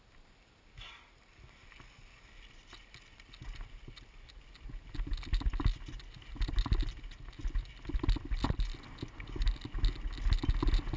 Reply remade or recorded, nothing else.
recorded